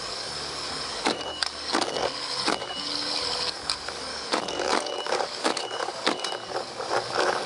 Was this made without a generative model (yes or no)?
no